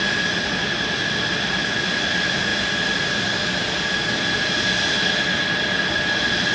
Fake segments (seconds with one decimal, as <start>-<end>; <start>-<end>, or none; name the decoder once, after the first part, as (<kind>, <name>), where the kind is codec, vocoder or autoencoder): none